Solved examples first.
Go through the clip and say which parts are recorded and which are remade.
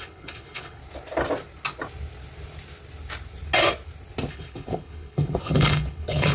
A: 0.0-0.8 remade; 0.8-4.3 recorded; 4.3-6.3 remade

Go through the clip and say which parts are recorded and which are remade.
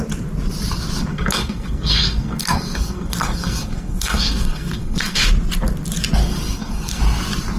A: 0.0-1.1 recorded; 1.1-5.2 remade; 5.2-6.2 recorded; 6.2-7.0 remade; 7.0-7.6 recorded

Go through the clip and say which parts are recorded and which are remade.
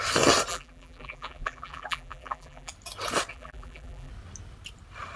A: 0.0-0.5 recorded; 0.5-2.7 remade; 2.7-3.3 recorded; 3.3-4.1 remade; 4.1-5.2 recorded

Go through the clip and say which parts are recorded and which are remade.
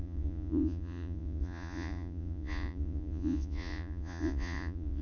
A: 0.0-5.0 remade